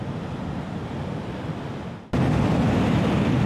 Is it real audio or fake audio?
real